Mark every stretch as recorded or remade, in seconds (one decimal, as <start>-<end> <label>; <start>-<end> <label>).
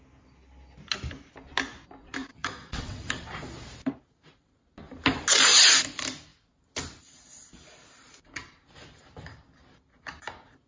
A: 0.0-2.3 recorded; 2.3-3.1 remade; 3.1-10.7 recorded